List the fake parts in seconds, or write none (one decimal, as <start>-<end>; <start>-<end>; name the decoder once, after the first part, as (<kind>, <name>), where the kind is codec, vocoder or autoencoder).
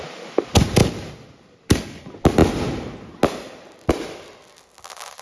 none